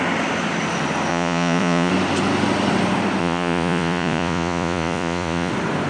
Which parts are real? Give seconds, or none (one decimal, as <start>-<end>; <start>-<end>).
0.0-1.1; 1.9-3.2; 5.5-5.9